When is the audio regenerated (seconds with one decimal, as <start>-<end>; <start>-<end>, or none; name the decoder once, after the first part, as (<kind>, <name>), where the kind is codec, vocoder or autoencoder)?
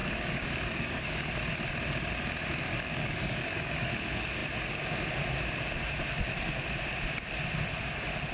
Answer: 0.0-1.3 (codec, DAC); 2.7-3.9